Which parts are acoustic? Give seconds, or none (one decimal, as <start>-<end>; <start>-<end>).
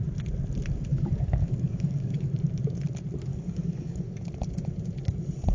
0.0-0.9; 2.3-3.3; 4.2-5.5